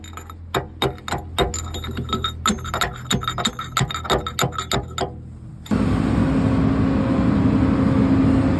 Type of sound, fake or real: real